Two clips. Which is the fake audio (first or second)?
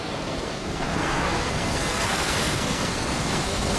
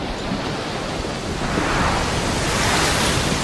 first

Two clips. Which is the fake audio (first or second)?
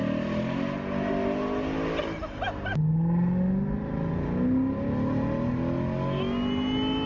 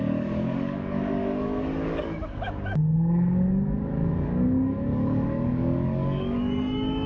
second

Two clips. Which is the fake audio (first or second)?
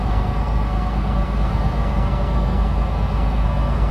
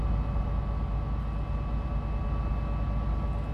first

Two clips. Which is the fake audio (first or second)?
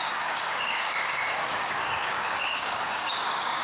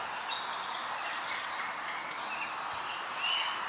first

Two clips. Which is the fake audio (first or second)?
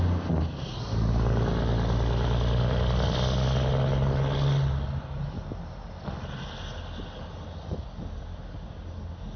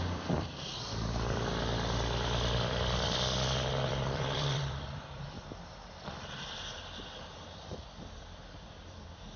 second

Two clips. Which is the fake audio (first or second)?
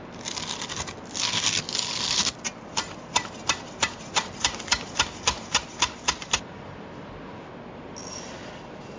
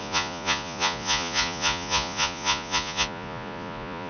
second